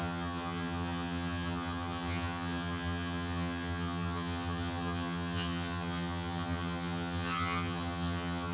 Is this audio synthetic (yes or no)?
yes